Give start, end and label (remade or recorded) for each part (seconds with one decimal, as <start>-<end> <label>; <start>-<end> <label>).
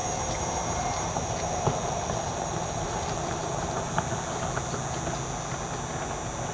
0.0-3.9 remade; 3.9-6.5 recorded